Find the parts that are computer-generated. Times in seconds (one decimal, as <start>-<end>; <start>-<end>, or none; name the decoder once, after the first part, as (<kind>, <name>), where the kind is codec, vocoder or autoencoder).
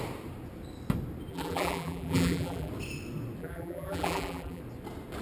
1.3-2.7 (vocoder, BigVGAN v2); 3.4-4.6